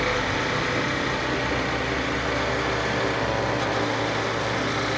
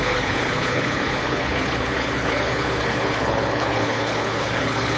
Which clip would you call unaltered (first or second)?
first